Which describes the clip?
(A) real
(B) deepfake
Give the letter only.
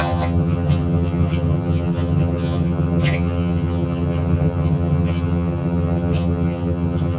B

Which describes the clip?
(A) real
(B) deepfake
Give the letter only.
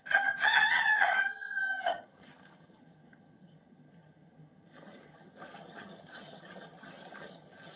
B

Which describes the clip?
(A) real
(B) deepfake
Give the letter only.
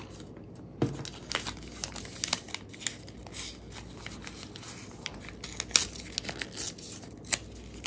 A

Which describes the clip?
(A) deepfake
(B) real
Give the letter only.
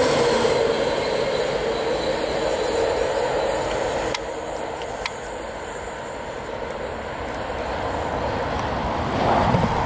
B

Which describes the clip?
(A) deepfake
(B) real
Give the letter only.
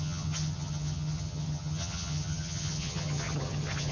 A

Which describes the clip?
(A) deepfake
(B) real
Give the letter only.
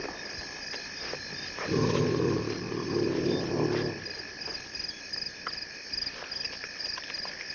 B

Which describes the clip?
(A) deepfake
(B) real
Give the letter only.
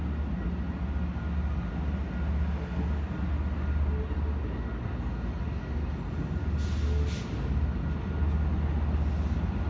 B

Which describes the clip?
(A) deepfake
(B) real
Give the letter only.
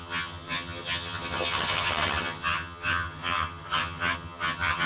A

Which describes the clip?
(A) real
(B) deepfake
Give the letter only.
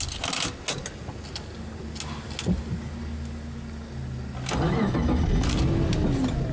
A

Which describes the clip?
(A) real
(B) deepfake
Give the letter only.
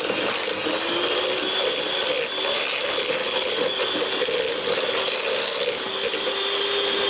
A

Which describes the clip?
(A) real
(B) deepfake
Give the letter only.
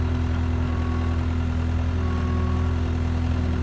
A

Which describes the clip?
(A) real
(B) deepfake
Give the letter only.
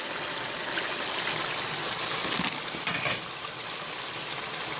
A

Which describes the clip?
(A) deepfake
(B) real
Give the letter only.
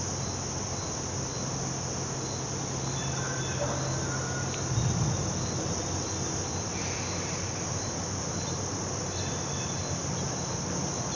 B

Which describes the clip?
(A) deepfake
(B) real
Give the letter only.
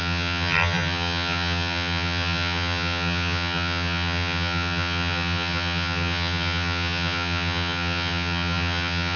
A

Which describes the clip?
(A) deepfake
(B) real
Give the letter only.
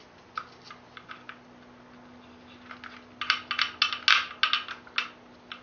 B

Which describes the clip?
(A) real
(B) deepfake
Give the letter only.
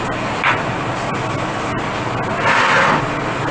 A